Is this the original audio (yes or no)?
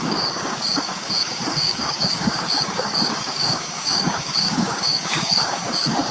no